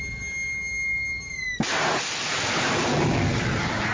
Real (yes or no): yes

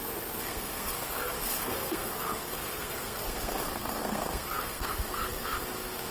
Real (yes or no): no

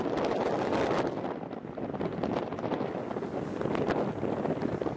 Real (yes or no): yes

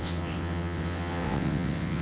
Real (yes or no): no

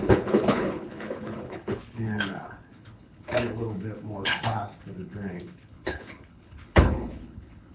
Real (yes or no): no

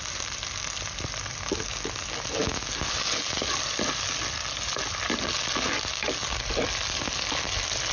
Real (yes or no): yes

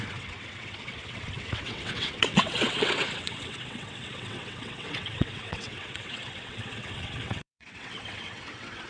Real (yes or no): no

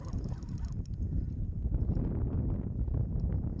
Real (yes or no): no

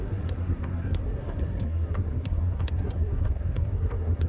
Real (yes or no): no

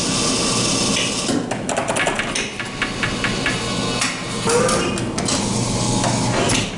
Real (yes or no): yes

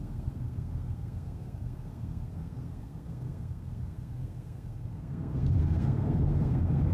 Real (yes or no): no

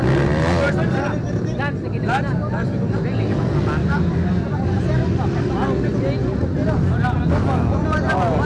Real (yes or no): yes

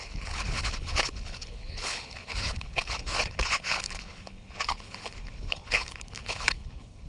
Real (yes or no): no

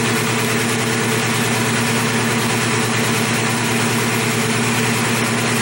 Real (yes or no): yes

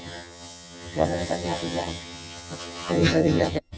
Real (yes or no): no